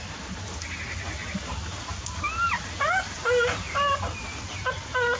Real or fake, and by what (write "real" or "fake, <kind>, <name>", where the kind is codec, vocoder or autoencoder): real